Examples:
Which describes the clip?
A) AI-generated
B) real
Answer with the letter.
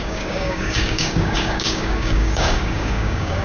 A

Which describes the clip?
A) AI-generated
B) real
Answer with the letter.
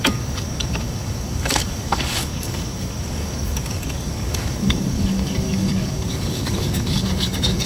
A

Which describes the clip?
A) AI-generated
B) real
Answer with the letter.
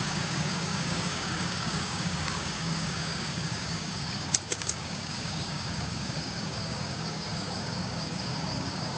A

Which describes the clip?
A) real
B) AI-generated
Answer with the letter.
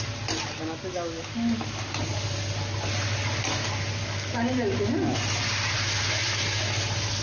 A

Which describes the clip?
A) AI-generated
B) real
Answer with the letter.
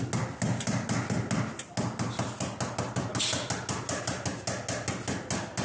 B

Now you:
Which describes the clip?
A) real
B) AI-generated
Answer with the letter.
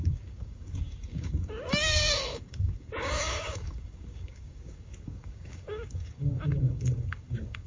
B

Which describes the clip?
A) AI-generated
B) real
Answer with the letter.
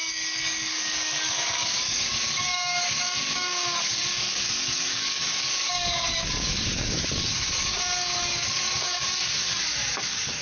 A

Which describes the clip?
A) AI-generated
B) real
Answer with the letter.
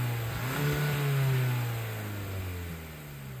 B